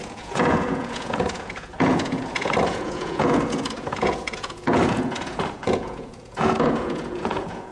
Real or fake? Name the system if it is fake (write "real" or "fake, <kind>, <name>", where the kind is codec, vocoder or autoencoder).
fake, vocoder, Vocos